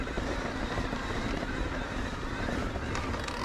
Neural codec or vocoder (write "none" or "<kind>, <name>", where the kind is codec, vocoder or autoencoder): none